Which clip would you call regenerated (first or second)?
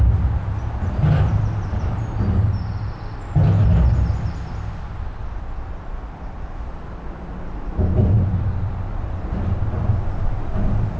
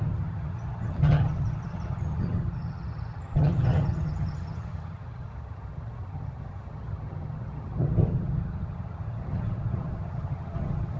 second